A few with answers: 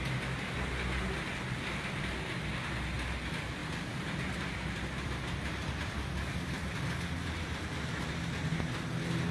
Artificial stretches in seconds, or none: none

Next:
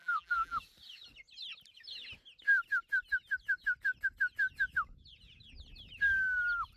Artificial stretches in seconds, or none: 0.0-0.6 (vocoder, BigVGAN v2)

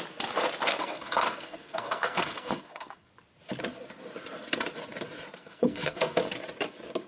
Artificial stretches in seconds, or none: 0.7-3.1 (codec, SNAC); 5.4-6.2

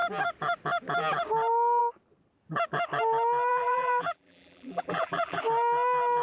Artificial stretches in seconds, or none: 3.5-5.4 (vocoder, BigVGAN v2)